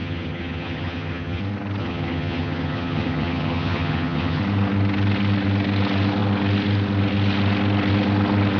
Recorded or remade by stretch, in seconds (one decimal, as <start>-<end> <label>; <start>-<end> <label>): 0.0-1.4 remade; 1.4-1.8 recorded; 1.8-4.4 remade; 4.4-8.6 recorded